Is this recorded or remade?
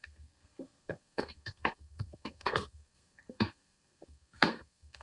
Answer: remade